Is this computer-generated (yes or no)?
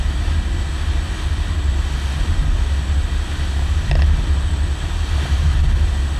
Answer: no